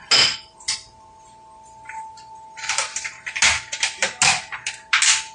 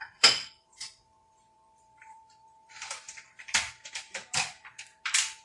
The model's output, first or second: second